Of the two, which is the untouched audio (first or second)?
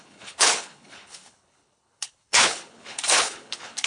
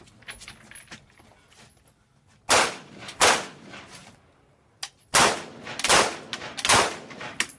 second